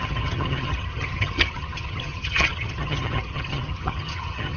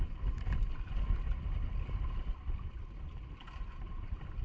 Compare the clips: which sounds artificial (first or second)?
first